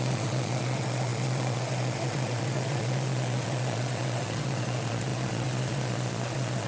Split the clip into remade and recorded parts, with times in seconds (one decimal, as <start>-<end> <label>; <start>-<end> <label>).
0.0-6.7 remade